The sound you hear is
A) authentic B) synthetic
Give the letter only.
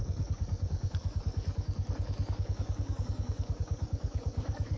B